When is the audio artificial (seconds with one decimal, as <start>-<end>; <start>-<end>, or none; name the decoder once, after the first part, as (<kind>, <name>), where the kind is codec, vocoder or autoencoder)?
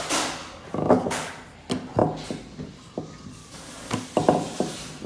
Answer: 0.4-1.3 (codec, DAC); 3.4-4.0